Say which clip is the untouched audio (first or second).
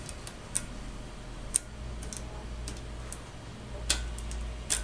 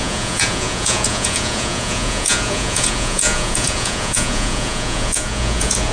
first